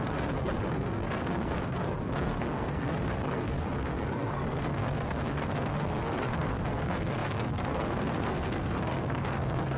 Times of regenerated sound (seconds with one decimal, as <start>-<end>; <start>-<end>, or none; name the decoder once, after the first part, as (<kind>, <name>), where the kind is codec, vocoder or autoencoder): 0.0-9.8 (codec, SNAC)